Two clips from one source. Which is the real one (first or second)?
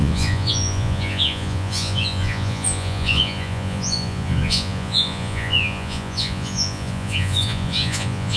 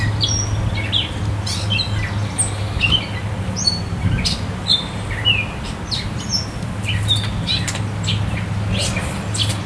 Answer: second